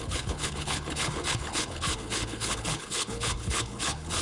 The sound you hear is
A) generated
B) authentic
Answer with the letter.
A